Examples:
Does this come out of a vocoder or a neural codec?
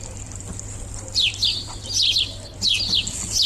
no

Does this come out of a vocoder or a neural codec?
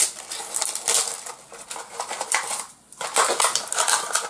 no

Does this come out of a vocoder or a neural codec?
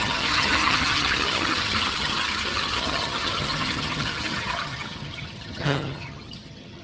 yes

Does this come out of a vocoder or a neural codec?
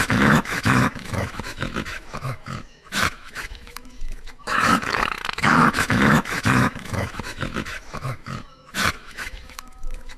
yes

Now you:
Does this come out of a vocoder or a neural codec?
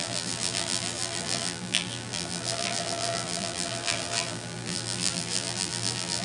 yes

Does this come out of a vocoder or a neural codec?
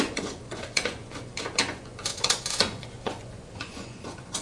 yes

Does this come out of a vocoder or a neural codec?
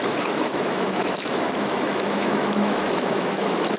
yes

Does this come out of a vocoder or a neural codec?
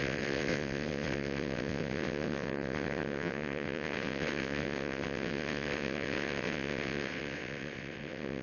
yes